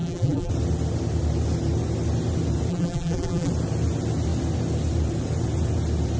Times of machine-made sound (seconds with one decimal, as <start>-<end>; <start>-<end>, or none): 0.0-0.5; 2.7-3.5